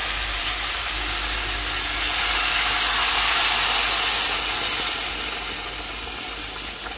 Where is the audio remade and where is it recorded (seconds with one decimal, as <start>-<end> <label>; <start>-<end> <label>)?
0.0-0.9 remade; 0.9-7.0 recorded